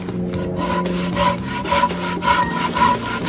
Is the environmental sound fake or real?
real